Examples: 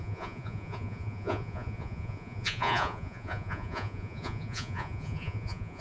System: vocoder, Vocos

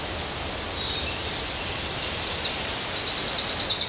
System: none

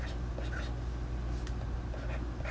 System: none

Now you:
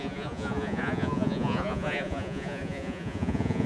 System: vocoder, Vocos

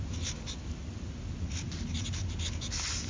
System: none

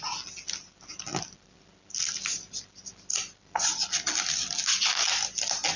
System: none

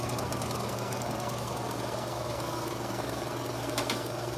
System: codec, SNAC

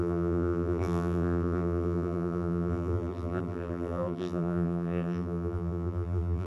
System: vocoder, BigVGAN v2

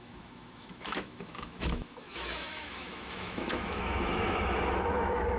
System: autoencoder, DAC-VAE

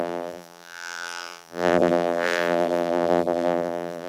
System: vocoder, BigVGAN v2